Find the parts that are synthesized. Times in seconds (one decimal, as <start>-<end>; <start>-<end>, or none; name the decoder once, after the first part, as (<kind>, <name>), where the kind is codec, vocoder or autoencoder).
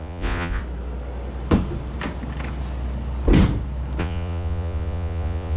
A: 0.0-0.6 (vocoder, Vocos); 4.0-5.6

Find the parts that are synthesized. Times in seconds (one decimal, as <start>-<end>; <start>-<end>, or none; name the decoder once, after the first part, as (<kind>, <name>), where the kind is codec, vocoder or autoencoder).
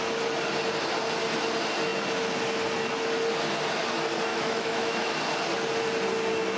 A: 4.3-5.1 (autoencoder, DAC-VAE)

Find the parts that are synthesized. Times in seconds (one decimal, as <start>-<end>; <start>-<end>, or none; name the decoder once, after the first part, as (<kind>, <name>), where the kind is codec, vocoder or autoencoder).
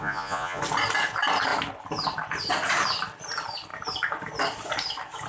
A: 0.0-0.6 (vocoder, Vocos)